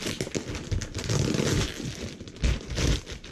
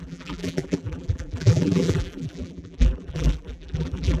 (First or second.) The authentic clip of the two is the first